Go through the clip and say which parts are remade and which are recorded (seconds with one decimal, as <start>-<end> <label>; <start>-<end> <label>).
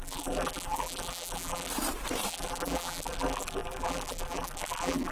0.0-1.7 remade; 1.7-2.3 recorded; 2.3-5.1 remade